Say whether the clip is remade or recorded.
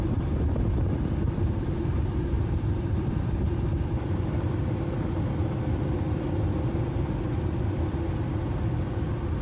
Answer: remade